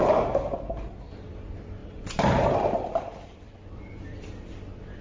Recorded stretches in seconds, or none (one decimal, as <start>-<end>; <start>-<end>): 0.0-0.9